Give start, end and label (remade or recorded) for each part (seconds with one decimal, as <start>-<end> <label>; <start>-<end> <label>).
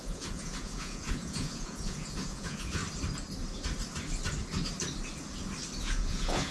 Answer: 0.0-2.8 remade; 2.8-5.8 recorded; 5.8-6.5 remade